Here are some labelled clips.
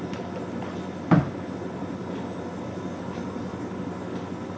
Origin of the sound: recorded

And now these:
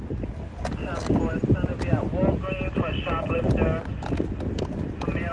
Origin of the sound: recorded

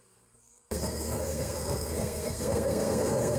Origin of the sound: remade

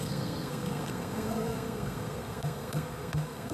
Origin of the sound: remade